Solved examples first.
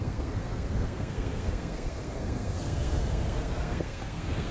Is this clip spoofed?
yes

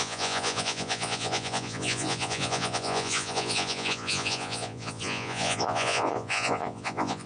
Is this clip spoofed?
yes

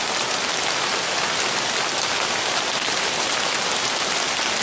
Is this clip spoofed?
no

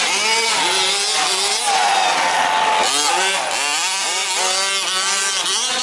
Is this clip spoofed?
no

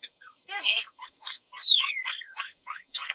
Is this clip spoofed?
yes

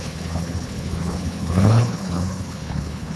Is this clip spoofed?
yes